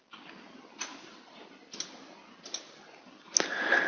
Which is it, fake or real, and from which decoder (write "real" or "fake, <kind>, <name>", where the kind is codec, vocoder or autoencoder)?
real